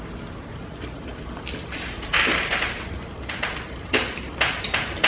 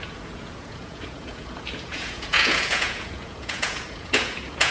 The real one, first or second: first